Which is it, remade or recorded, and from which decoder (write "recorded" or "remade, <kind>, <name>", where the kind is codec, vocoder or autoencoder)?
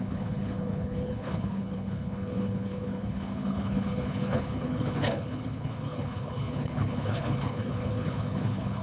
remade, codec, HILCodec